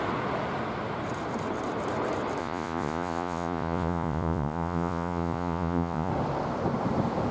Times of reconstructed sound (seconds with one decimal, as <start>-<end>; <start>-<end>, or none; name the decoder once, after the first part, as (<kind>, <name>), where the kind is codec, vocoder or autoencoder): 2.4-6.1 (vocoder, Vocos)